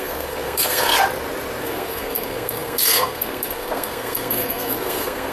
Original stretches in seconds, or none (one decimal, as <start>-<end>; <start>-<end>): 0.9-1.6